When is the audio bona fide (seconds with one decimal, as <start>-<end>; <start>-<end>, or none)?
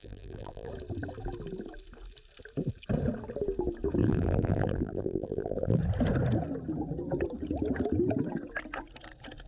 0.7-4.0; 5.8-9.5